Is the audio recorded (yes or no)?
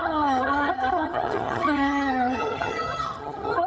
no